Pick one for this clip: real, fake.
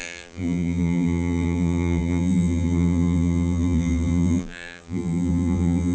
fake